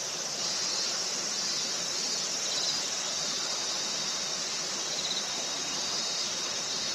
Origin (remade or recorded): remade